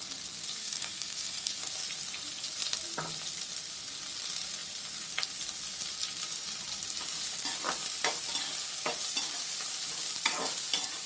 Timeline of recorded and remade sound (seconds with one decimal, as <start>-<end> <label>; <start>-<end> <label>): 0.0-0.6 recorded; 0.6-1.5 remade; 1.5-11.1 recorded